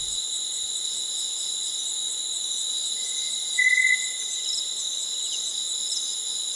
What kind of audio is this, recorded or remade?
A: remade